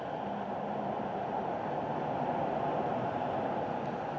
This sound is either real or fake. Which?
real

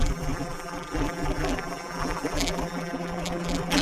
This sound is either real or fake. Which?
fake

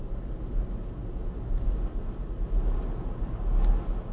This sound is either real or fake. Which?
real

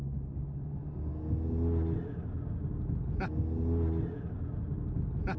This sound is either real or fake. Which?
real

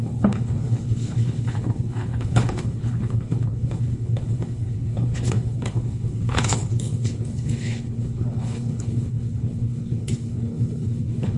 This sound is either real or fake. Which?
fake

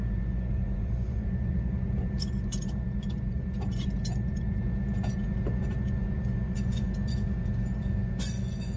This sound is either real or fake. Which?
fake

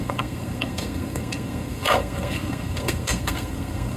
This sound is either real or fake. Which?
fake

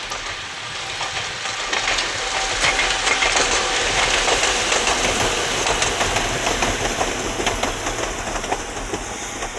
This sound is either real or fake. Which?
real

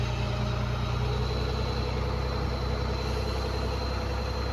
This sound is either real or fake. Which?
real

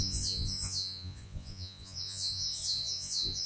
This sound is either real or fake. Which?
fake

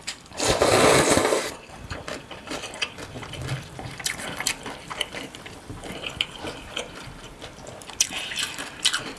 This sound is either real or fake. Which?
fake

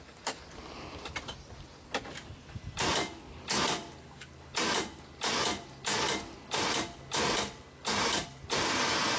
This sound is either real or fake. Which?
real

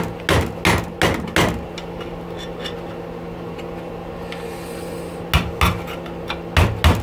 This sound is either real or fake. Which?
real